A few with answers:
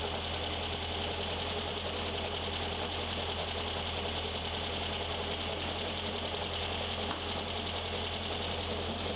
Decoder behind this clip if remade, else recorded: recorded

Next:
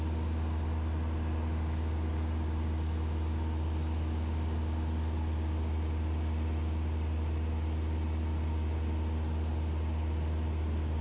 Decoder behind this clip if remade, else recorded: recorded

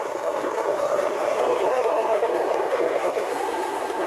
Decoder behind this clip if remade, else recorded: remade, codec, SNAC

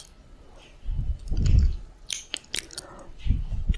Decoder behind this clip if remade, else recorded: recorded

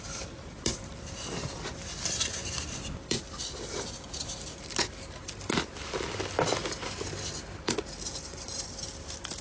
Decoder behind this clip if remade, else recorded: remade, vocoder, BigVGAN v2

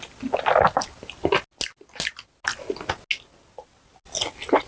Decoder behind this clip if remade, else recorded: recorded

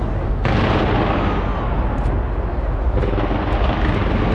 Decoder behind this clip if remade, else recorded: recorded